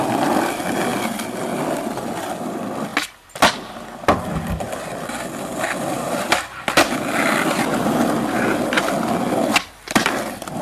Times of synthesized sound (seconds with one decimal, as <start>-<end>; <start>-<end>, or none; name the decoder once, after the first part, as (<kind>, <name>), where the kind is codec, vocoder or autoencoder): none